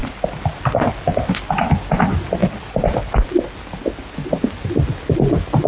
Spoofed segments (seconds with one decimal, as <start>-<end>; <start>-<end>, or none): none